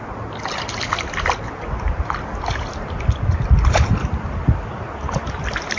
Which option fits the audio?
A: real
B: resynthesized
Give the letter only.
A